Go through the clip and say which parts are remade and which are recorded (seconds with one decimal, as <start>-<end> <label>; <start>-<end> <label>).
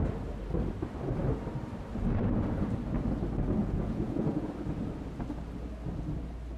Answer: 0.0-3.6 recorded; 3.6-4.5 remade; 4.5-6.6 recorded